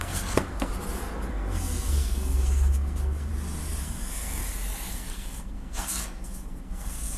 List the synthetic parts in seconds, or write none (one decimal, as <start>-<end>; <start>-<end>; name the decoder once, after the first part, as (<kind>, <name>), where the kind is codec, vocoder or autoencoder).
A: 0.0-0.7 (codec, SNAC); 1.3-3.3; 3.8-4.4; 4.9-7.2